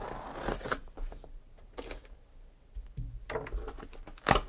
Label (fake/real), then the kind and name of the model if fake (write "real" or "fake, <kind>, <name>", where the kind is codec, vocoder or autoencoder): real